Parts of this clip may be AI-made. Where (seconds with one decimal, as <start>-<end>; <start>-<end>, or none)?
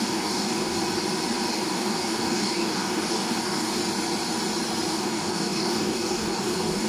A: 0.0-0.8; 1.5-3.8; 4.9-6.9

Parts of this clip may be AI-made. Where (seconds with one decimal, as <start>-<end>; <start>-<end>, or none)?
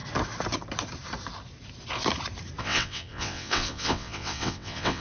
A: 2.6-5.0